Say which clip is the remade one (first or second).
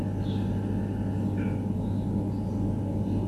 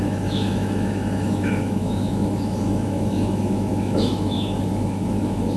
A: second